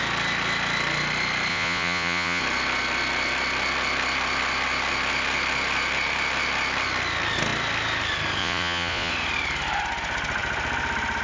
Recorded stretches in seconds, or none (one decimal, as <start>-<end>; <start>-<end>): 0.0-1.5; 2.4-8.4; 9.1-11.2